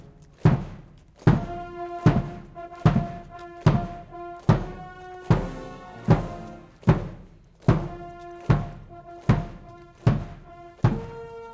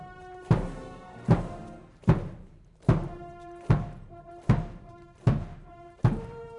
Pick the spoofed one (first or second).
second